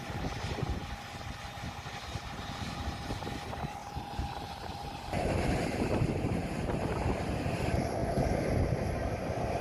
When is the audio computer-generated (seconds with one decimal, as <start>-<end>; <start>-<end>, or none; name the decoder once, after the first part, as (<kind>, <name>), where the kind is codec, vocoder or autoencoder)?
0.0-0.8 (vocoder, BigVGAN v2); 2.2-3.8; 4.4-8.0